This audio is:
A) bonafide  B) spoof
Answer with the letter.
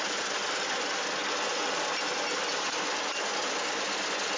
A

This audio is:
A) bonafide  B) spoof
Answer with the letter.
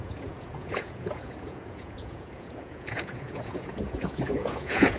B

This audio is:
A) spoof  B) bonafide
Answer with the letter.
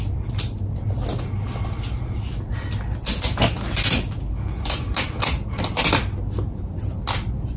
B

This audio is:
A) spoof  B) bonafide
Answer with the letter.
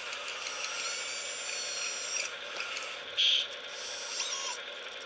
B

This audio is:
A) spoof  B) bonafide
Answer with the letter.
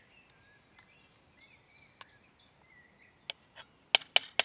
B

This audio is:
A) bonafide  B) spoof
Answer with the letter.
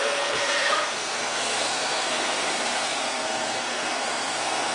B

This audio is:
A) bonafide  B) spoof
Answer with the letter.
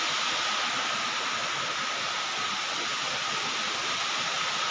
A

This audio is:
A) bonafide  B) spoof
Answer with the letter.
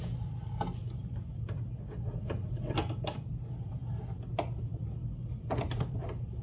A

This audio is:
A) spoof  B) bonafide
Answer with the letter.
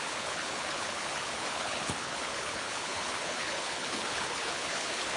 A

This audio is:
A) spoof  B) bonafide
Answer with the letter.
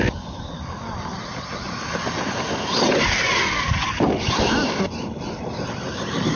B